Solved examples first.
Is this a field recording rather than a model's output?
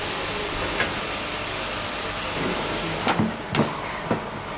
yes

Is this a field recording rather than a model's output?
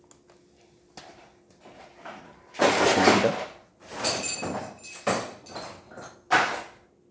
yes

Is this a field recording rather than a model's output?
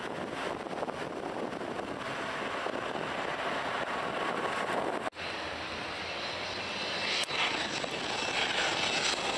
yes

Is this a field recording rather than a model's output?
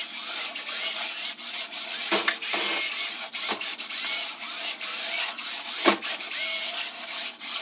yes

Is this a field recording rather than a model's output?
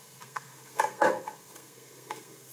no